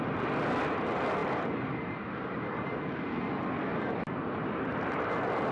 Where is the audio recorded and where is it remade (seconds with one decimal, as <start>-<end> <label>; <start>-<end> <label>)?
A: 0.0-5.5 recorded